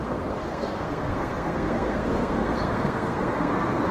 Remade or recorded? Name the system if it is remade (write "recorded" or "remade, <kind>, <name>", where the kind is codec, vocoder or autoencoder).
remade, codec, SNAC